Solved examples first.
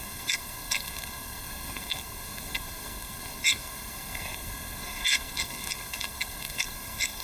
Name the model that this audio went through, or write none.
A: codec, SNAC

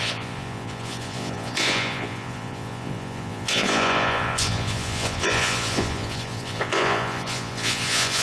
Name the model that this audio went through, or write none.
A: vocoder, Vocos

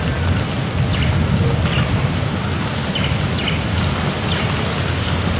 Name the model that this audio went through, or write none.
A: none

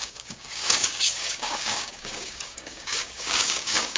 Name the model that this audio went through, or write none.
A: codec, DAC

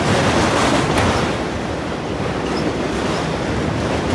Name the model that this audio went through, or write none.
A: none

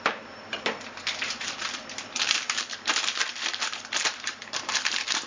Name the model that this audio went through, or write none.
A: vocoder, BigVGAN v2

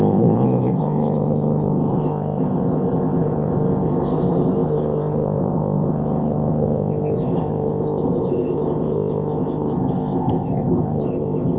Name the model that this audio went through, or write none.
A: codec, ZipCodec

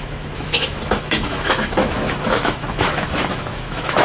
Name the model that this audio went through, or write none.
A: autoencoder, DAC-VAE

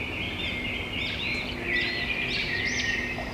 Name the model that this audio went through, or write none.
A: none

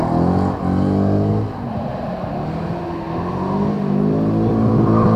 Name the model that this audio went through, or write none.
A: none